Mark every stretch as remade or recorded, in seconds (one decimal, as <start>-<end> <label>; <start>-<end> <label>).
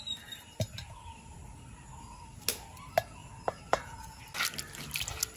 0.0-5.4 recorded